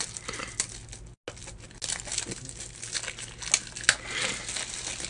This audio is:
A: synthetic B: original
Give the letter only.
B